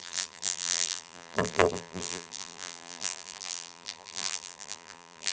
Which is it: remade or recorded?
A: remade